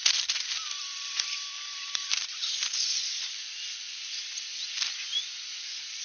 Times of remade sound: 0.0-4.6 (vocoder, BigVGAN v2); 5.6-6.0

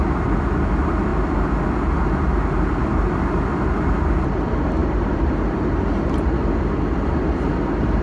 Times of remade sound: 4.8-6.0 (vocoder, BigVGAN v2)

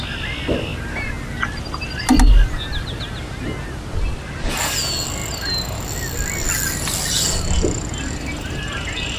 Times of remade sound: none

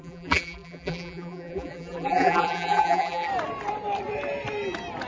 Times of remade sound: 0.0-3.3 (vocoder, BigVGAN v2)

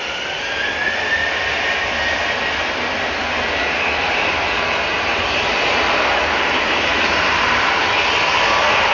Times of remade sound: 4.9-7.8 (vocoder, BigVGAN v2)